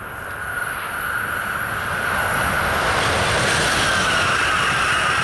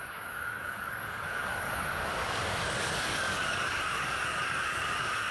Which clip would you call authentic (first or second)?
first